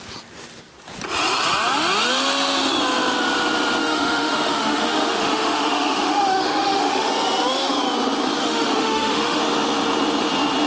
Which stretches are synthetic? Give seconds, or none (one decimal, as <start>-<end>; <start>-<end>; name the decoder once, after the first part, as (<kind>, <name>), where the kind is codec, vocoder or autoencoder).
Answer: 3.8-7.1 (autoencoder, DAC-VAE); 8.4-9.4

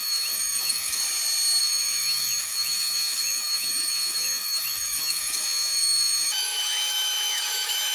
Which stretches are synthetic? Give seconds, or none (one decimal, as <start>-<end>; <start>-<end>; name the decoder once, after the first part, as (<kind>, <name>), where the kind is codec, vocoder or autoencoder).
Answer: 0.0-1.0 (autoencoder, DAC-VAE); 1.6-7.9

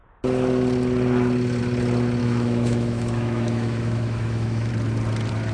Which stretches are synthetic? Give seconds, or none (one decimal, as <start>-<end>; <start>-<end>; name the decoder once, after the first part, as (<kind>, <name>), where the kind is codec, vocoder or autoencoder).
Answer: 2.2-4.7 (autoencoder, DAC-VAE)

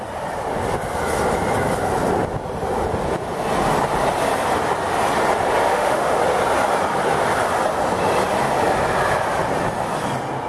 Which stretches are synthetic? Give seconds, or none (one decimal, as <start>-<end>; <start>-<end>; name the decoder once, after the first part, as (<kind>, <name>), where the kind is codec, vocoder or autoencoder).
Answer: 5.6-6.2 (autoencoder, DAC-VAE)

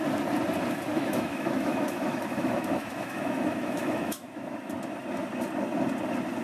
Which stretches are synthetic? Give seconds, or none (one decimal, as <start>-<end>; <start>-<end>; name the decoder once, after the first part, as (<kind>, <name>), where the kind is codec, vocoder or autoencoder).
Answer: 0.9-4.7 (autoencoder, DAC-VAE)

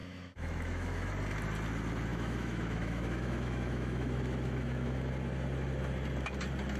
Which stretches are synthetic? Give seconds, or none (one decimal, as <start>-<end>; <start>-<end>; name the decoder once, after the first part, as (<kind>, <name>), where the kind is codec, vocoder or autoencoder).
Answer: 0.0-1.1 (autoencoder, DAC-VAE); 2.1-5.1

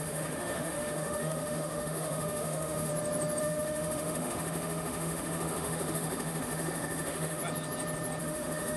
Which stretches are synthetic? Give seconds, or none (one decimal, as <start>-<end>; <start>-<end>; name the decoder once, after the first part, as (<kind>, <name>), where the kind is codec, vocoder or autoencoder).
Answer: 0.0-2.9 (autoencoder, DAC-VAE); 3.4-7.4; 8.2-8.8